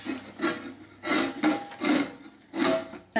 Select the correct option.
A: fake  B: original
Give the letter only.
B